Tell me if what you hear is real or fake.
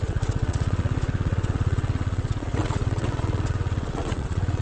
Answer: fake